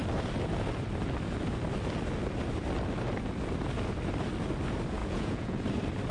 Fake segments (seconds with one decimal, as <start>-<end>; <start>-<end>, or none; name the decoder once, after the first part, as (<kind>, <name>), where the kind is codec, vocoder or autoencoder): 5.0-5.6 (vocoder, Vocos)